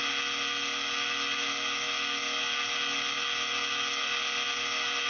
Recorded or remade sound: recorded